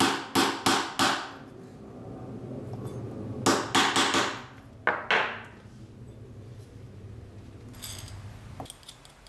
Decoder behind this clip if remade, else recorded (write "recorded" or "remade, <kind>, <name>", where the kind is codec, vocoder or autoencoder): recorded